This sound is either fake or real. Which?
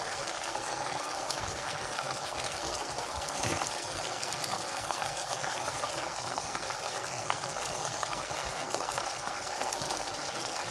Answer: fake